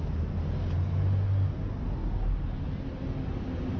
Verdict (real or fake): real